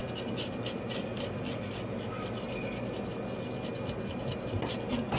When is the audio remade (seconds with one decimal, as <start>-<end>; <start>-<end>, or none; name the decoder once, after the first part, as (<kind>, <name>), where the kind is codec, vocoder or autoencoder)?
none